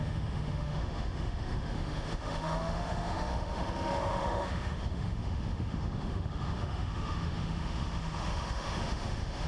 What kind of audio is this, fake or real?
fake